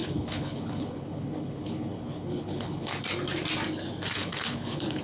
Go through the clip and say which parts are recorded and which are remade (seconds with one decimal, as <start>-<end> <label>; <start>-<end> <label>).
0.0-3.0 remade; 3.0-4.2 recorded; 4.2-5.0 remade